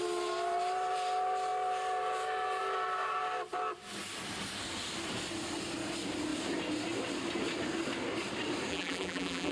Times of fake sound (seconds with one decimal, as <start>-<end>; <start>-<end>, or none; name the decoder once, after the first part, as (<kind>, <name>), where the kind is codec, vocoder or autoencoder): 8.7-9.5 (vocoder, BigVGAN v2)

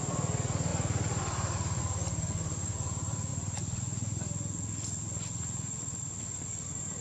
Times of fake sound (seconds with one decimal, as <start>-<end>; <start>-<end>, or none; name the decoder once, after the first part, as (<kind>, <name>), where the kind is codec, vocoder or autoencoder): 0.7-1.8 (vocoder, BigVGAN v2)